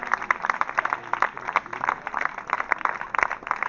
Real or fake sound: real